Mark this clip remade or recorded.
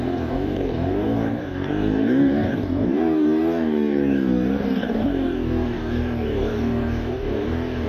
remade